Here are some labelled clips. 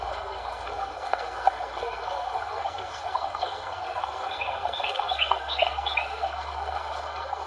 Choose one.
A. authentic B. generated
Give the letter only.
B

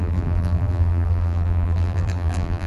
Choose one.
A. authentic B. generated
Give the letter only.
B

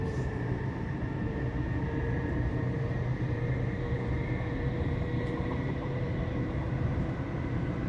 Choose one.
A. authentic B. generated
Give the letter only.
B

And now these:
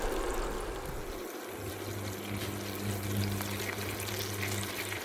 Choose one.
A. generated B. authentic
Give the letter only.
B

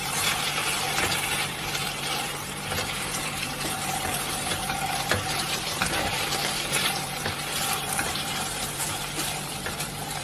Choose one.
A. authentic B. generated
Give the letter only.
B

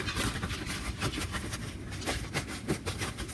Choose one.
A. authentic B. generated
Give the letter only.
A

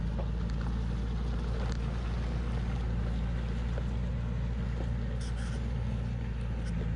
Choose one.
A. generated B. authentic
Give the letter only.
B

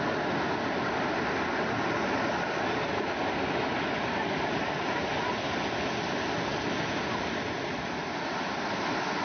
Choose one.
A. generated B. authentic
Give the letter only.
B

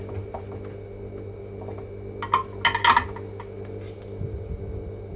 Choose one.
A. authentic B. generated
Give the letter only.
A